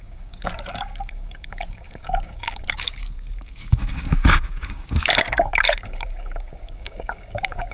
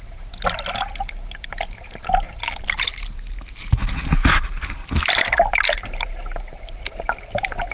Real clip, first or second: second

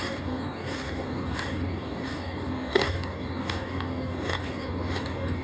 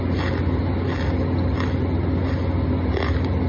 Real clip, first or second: second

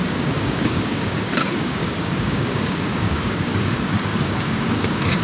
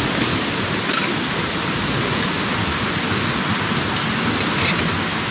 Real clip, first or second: second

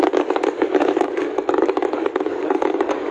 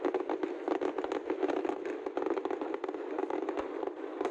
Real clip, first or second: second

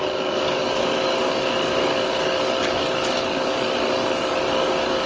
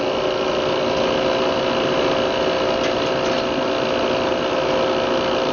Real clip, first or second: second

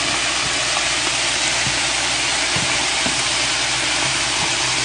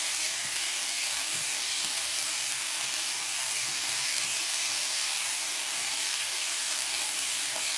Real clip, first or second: first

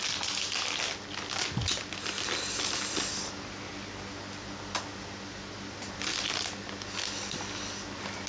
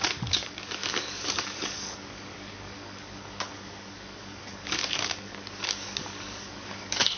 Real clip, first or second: first